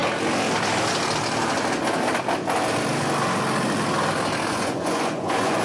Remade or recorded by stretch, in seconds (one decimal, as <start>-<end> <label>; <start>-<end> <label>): 0.0-4.5 recorded; 4.5-5.6 remade